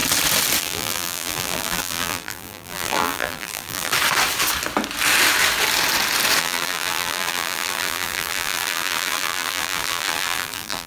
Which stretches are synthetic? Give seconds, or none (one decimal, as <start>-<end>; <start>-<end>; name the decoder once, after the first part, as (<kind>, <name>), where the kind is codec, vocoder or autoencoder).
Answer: 0.6-3.9 (vocoder, BigVGAN v2); 6.4-10.9